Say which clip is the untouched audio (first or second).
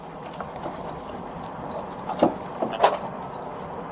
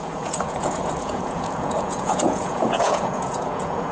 first